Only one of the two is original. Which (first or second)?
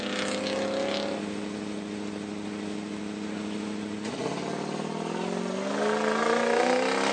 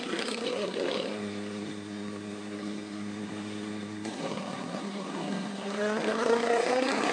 first